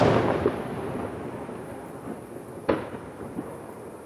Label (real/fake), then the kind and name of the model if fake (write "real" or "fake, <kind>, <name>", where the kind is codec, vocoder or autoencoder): real